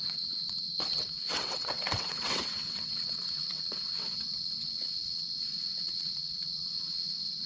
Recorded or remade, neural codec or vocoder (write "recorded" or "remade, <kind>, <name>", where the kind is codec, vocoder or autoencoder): remade, vocoder, WaveNeXt